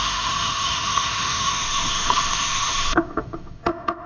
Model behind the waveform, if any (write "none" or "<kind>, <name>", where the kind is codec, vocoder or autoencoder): autoencoder, DAC-VAE